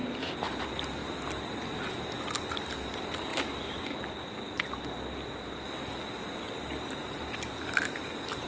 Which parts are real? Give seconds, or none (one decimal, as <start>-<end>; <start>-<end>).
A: 0.0-8.5